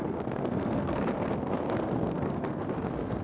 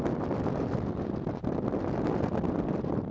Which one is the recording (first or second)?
second